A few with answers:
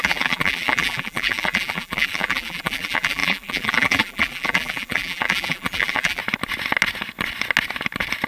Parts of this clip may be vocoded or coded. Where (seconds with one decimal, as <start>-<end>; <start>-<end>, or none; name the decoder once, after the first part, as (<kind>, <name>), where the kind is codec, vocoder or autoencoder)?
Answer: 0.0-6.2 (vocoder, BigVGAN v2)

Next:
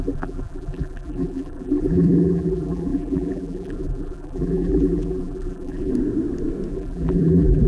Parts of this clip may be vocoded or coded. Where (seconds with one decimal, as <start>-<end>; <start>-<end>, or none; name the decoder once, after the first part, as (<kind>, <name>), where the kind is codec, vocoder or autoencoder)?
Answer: 0.0-5.9 (vocoder, BigVGAN v2); 6.7-7.7

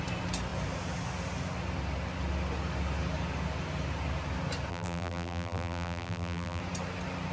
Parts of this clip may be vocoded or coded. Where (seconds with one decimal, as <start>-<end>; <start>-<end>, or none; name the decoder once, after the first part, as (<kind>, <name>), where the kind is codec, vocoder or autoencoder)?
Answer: 4.7-6.6 (vocoder, BigVGAN v2)

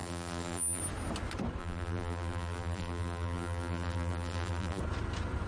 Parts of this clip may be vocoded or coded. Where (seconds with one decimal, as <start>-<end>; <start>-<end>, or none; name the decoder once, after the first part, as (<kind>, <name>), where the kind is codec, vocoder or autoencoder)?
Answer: 0.0-0.8 (vocoder, BigVGAN v2); 1.6-4.8

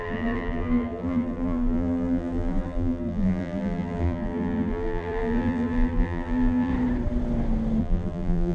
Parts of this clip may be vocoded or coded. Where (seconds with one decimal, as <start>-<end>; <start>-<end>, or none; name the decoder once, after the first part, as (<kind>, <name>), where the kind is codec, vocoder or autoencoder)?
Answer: 0.0-6.7 (vocoder, BigVGAN v2); 7.8-8.5

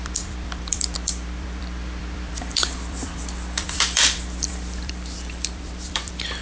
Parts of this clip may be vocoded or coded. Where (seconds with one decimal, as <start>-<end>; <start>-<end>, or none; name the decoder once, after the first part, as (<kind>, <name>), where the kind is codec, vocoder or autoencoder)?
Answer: 0.0-6.4 (vocoder, BigVGAN v2)